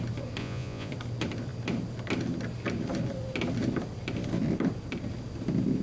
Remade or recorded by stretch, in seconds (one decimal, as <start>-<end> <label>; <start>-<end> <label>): 0.0-0.4 recorded; 0.4-0.9 remade; 0.9-5.8 recorded